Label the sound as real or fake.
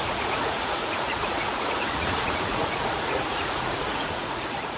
fake